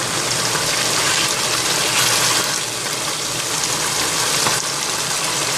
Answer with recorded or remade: recorded